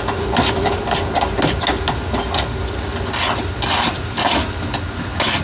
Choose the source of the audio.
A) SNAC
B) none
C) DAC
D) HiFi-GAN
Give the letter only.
B